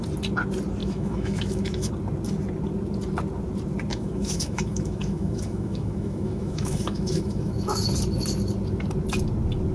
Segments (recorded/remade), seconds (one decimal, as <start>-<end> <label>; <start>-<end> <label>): 0.0-0.8 recorded; 0.8-1.9 remade; 1.9-3.9 recorded; 3.9-7.8 remade; 7.8-9.7 recorded